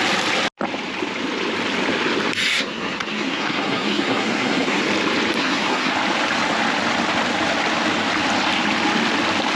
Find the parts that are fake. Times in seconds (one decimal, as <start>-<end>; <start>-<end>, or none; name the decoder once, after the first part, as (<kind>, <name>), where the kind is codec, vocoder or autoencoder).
2.5-4.8 (codec, SNAC); 5.4-5.9